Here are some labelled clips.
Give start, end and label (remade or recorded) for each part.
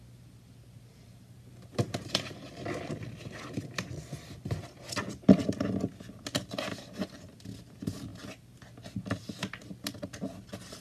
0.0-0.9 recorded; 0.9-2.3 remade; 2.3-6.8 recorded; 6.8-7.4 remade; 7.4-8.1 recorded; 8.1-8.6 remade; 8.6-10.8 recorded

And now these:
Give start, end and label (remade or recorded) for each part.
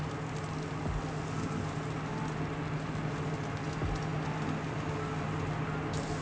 0.0-6.2 recorded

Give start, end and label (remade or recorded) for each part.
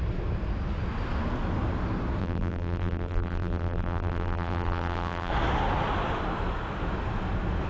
0.0-2.2 recorded; 2.2-5.3 remade; 5.3-7.7 recorded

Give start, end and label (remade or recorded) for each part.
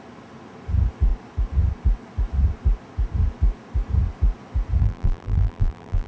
0.0-4.8 recorded; 4.8-6.1 remade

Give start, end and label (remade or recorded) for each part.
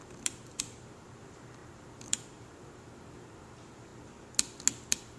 0.0-3.9 remade; 3.9-5.2 recorded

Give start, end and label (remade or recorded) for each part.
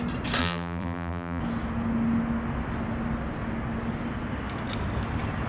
0.0-0.4 recorded; 0.4-1.4 remade; 1.4-5.5 recorded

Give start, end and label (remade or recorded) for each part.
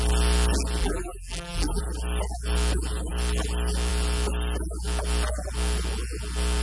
0.0-0.8 recorded; 0.8-1.8 remade; 1.8-6.6 recorded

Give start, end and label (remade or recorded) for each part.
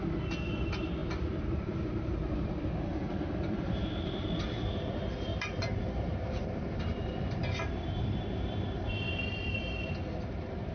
0.0-1.0 recorded; 1.0-4.4 remade; 4.4-5.3 recorded; 5.3-8.9 remade; 8.9-10.7 recorded